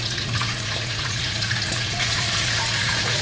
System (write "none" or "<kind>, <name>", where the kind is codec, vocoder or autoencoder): vocoder, Vocos